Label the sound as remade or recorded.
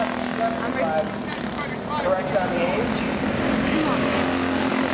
recorded